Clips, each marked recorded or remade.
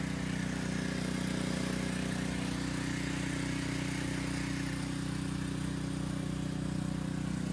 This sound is recorded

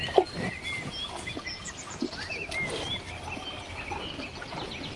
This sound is recorded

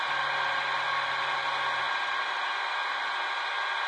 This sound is recorded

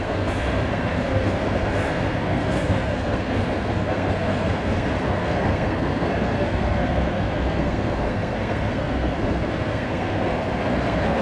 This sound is remade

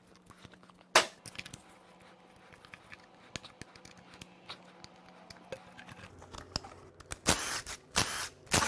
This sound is recorded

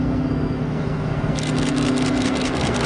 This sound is remade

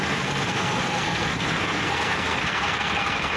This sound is remade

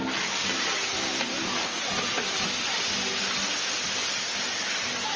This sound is recorded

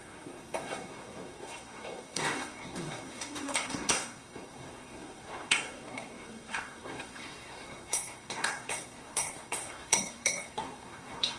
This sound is remade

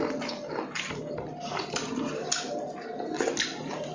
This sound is recorded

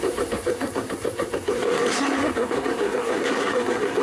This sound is remade